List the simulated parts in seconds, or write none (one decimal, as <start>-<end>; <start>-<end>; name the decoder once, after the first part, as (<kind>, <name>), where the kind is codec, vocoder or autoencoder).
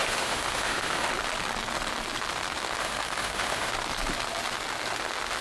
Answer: 0.0-1.1 (autoencoder, DAC-VAE); 2.8-3.7